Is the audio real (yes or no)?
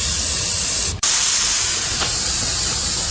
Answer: no